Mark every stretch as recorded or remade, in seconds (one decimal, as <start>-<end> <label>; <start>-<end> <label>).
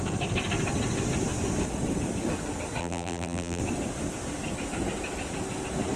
0.0-2.8 recorded; 2.8-3.6 remade; 3.6-6.0 recorded